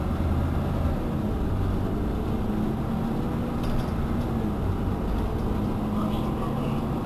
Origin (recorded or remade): recorded